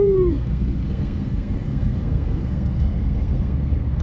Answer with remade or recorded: remade